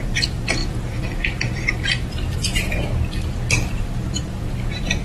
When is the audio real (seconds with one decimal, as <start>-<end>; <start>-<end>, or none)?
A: 2.8-3.8